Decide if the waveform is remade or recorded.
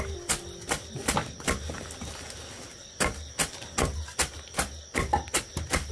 recorded